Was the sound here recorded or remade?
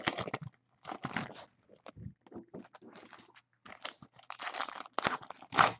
recorded